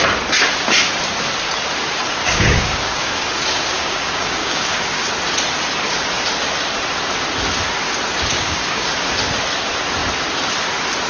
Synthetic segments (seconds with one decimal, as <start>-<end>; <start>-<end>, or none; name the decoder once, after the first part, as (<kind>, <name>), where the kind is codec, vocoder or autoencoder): 2.2-5.1 (codec, DAC); 8.3-8.9